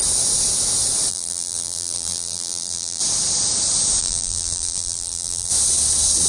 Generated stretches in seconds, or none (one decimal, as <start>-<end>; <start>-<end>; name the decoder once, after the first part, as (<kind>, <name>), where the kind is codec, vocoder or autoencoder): 1.1-3.0 (vocoder, BigVGAN v2); 4.0-5.5